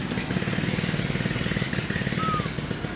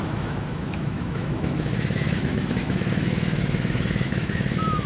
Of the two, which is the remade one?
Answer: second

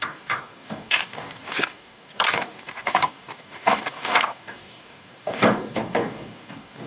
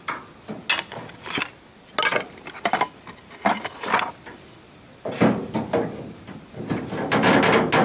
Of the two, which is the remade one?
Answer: first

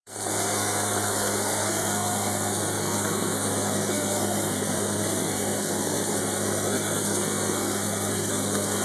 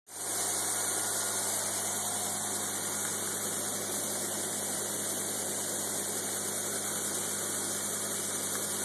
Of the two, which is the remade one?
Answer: first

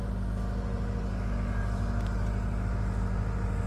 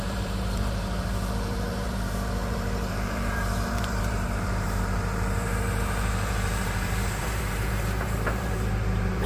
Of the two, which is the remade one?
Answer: second